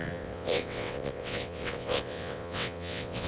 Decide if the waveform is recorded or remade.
remade